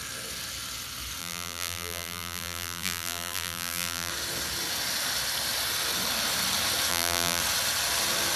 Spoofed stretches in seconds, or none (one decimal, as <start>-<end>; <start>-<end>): 1.2-4.1; 6.9-7.4